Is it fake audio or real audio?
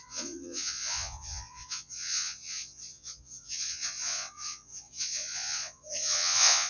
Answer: fake